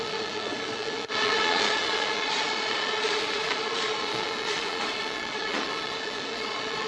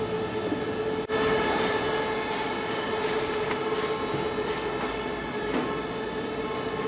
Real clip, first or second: second